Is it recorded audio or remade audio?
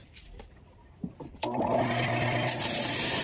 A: remade